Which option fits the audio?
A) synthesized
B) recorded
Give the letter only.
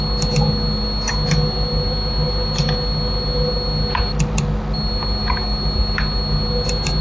B